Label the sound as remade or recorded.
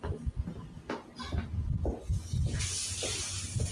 recorded